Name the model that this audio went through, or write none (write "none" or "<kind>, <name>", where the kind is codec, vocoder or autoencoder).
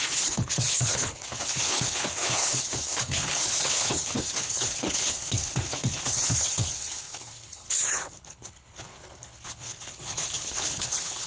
codec, HILCodec